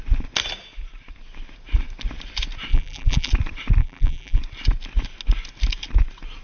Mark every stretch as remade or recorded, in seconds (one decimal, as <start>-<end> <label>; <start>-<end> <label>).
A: 0.0-2.7 recorded; 2.7-3.3 remade; 3.3-3.8 recorded; 3.8-4.4 remade; 4.4-6.4 recorded